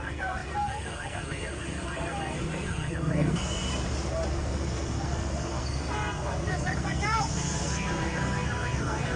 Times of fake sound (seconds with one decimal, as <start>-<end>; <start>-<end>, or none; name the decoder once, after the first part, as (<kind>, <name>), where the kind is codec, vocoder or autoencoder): 0.0-3.7 (codec, SNAC); 4.3-9.2